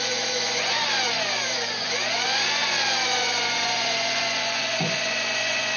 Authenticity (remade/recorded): remade